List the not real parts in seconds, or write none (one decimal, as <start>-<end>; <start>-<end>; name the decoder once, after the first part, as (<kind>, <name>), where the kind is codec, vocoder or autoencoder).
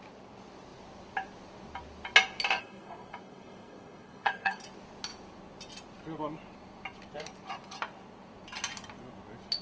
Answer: 2.6-4.6 (codec, SNAC)